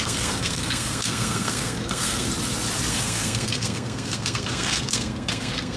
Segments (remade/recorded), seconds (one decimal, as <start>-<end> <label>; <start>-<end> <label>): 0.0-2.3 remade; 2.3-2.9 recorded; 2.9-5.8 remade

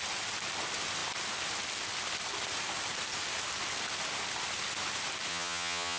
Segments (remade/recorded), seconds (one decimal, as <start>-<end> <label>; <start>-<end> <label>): 0.0-5.3 recorded; 5.3-6.0 remade

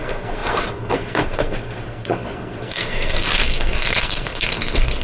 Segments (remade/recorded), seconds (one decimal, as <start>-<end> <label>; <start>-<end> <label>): 0.0-5.0 remade

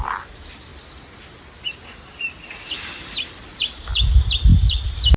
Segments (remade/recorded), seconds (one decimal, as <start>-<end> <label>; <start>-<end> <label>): 0.0-5.2 recorded

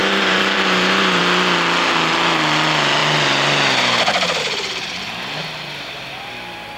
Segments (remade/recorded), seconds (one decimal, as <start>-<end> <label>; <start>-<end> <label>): 0.0-1.2 remade; 1.2-6.8 recorded

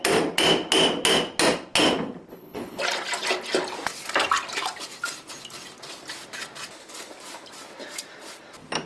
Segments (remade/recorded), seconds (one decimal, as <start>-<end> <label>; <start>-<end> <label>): 0.0-2.3 recorded; 2.3-2.8 remade; 2.8-8.9 recorded